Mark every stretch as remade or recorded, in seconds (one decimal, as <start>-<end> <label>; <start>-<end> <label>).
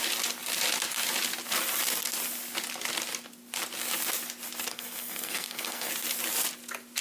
0.0-4.7 recorded; 4.7-5.9 remade; 5.9-7.0 recorded